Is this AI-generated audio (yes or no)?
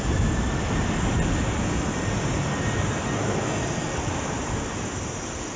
no